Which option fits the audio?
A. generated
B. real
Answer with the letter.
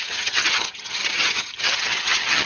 A